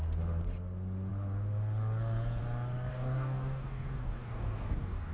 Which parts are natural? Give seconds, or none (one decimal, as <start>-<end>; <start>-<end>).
0.0-2.9